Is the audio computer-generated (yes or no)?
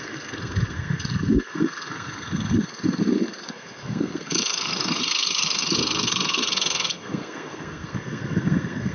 yes